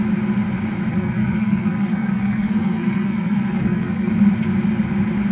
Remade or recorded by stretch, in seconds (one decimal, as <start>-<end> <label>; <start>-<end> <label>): 0.0-0.9 recorded; 0.9-4.1 remade; 4.1-5.3 recorded